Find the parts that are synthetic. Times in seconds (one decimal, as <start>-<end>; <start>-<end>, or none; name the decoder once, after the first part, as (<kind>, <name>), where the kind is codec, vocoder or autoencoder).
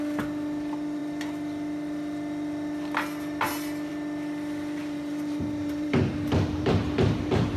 4.8-7.6 (vocoder, BigVGAN v2)